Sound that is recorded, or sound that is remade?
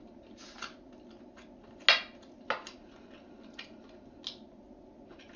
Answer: recorded